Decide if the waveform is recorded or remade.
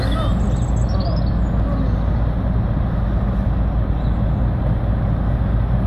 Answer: recorded